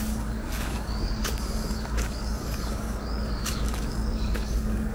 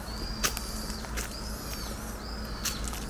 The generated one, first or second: first